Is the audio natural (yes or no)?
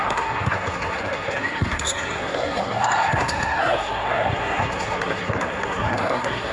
no